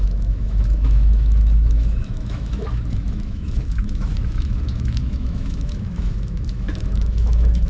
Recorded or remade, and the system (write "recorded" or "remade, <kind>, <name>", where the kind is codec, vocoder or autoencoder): remade, autoencoder, DAC-VAE